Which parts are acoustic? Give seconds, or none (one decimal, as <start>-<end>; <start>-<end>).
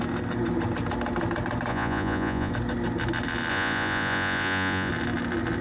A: 0.0-1.7; 2.5-3.5; 4.9-5.6